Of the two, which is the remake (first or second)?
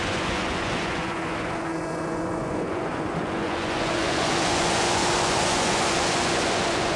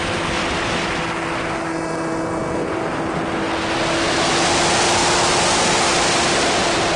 first